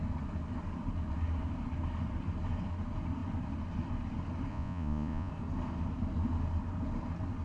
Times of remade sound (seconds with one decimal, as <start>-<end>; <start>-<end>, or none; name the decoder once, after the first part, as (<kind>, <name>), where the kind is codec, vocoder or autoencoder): 4.5-5.3 (vocoder, Vocos)